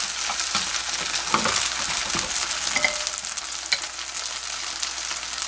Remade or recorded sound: recorded